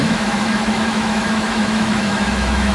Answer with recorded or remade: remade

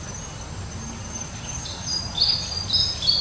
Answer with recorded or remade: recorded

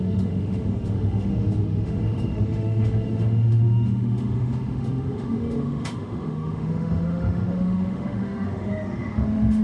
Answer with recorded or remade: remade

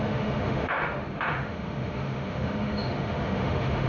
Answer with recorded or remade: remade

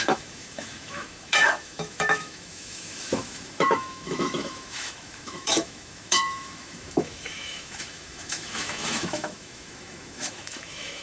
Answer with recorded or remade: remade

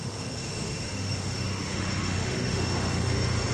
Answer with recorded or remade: remade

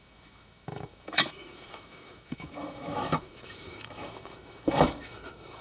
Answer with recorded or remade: remade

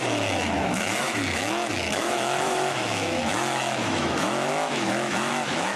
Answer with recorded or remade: remade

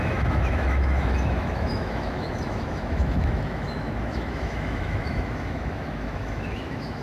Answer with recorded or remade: remade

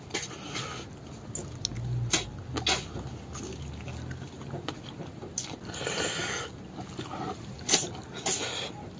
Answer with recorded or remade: recorded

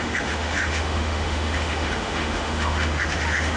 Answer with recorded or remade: remade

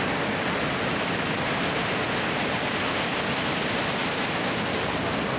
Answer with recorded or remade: recorded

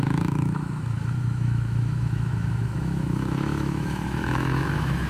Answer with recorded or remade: remade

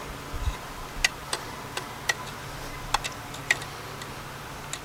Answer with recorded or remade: recorded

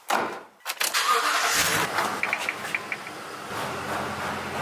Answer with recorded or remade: recorded